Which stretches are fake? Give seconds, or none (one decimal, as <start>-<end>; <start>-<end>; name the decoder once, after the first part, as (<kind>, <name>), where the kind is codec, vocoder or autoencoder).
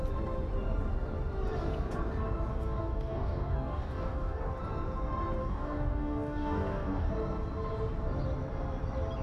2.5-4.4 (codec, DAC); 5.4-7.1